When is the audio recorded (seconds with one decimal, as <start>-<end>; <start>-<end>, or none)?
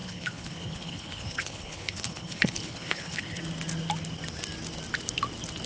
3.4-5.7